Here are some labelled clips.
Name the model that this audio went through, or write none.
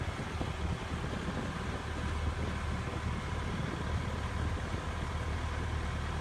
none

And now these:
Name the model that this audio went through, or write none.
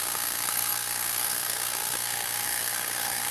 codec, SNAC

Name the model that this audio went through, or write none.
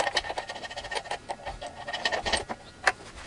none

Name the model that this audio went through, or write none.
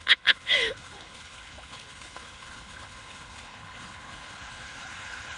codec, HILCodec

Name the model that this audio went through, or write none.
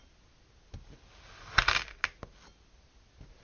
none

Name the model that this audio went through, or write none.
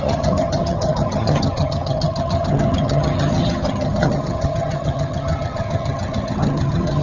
vocoder, HiFi-GAN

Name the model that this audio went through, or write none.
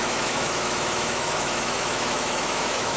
autoencoder, DAC-VAE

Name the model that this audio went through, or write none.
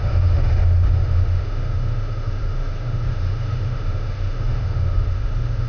autoencoder, DAC-VAE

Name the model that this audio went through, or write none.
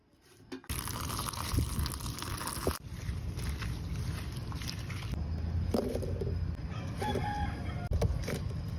none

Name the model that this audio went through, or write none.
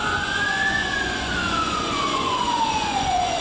vocoder, Vocos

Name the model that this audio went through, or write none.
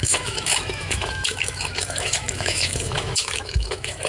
autoencoder, DAC-VAE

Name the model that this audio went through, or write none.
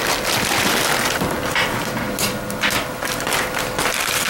none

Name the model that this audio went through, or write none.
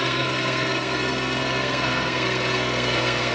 codec, SNAC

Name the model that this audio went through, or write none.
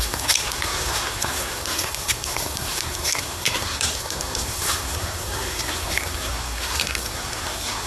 codec, SNAC